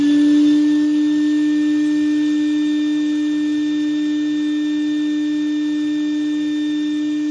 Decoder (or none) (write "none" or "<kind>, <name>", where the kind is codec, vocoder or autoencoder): none